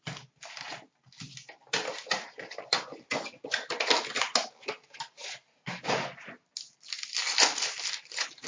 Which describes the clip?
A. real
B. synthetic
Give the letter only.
A